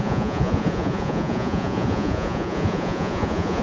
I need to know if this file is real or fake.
fake